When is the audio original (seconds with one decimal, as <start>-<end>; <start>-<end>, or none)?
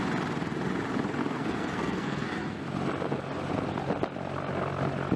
0.0-1.2; 2.6-5.2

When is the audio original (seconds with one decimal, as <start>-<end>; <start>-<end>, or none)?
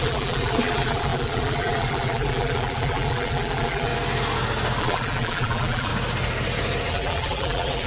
3.9-4.8; 5.9-6.9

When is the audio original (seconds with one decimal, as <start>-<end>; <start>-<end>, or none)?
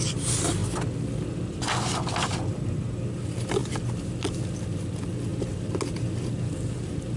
0.0-7.2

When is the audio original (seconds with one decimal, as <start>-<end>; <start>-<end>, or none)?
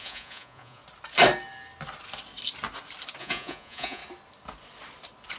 0.8-3.2; 4.0-5.4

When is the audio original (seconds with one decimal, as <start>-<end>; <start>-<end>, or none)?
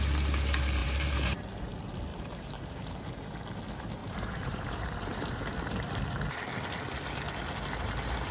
0.0-0.8; 1.4-2.1; 3.0-4.0; 5.7-8.3